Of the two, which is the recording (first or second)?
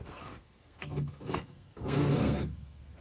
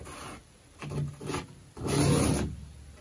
second